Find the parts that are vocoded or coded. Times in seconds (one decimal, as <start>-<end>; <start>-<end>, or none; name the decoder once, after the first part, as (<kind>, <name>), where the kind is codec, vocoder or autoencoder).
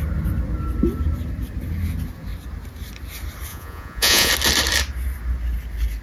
3.5-4.3 (vocoder, Vocos)